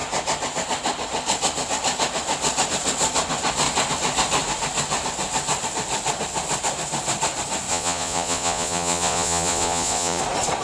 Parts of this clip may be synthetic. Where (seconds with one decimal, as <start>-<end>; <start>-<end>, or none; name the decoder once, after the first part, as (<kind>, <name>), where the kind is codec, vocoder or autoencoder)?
7.7-10.2 (vocoder, Vocos)